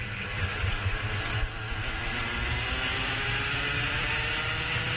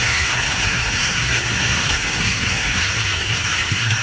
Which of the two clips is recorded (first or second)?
first